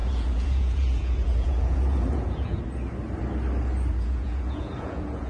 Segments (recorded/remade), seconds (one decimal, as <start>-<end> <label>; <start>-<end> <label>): 0.0-2.6 remade; 2.6-3.9 recorded; 3.9-5.3 remade